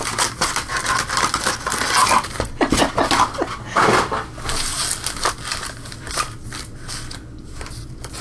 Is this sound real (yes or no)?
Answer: yes